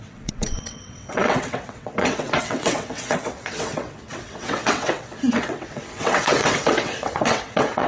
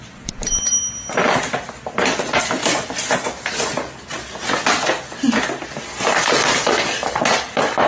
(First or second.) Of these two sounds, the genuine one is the second